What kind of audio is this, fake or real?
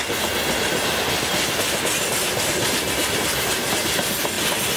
real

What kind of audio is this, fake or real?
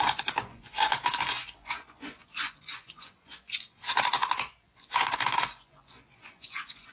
fake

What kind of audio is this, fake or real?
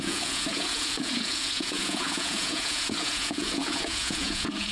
fake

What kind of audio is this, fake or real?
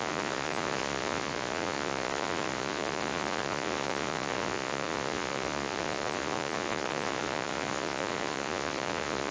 fake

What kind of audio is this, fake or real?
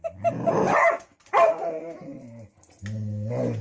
real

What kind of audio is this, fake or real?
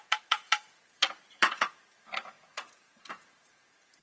fake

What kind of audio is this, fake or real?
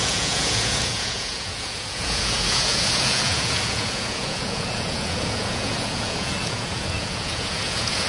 fake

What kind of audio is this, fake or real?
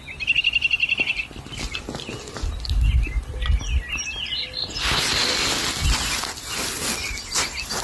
real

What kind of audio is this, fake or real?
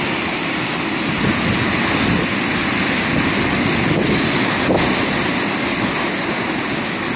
real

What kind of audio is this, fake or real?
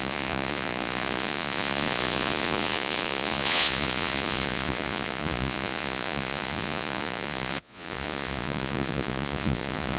fake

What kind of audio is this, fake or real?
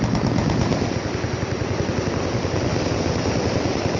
real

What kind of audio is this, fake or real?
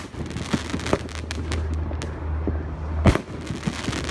real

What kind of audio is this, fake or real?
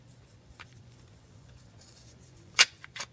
fake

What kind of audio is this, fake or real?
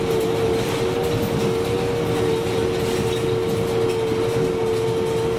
real